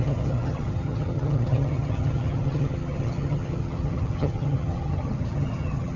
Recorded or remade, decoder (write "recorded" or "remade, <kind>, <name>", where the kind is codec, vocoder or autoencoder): remade, vocoder, HiFi-GAN